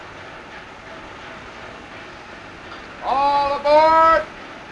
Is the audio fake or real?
real